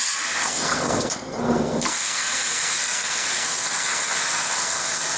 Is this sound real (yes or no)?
no